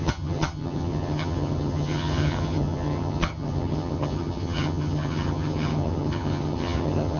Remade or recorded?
remade